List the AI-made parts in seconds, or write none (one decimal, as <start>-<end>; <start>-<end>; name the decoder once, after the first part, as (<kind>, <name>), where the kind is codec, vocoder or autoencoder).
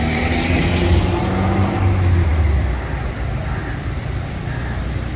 none